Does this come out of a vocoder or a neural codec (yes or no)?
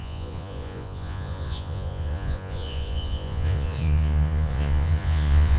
yes